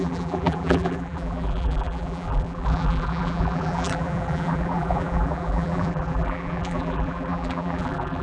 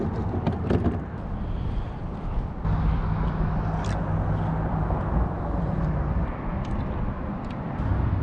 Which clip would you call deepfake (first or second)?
first